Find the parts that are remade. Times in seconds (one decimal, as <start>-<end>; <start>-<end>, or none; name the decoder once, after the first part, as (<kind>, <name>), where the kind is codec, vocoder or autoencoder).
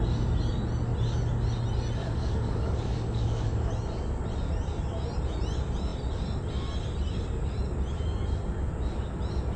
2.0-3.7 (codec, DAC)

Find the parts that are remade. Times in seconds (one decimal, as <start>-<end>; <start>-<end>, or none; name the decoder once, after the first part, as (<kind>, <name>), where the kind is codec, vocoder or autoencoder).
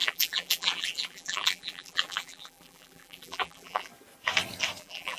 0.0-3.9 (vocoder, BigVGAN v2); 4.8-5.2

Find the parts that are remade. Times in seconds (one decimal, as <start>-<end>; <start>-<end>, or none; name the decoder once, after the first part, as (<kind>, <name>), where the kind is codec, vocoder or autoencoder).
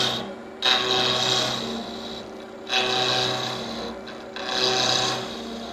none